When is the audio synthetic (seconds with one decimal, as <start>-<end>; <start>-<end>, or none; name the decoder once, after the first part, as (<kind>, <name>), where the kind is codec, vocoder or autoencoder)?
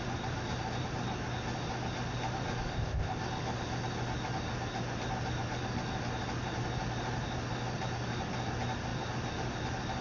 2.7-3.2 (codec, ZipCodec)